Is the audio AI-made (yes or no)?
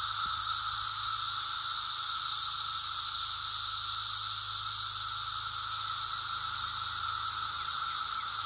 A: no